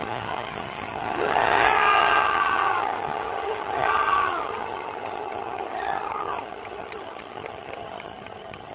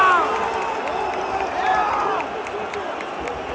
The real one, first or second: second